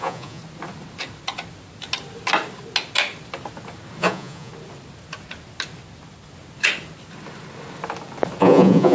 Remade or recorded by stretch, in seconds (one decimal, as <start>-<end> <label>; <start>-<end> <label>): 0.0-0.4 remade; 0.4-4.0 recorded; 4.0-4.5 remade; 4.5-8.4 recorded; 8.4-8.9 remade